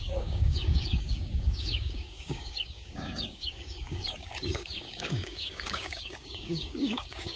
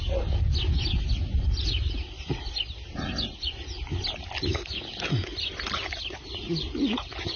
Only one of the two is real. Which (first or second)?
second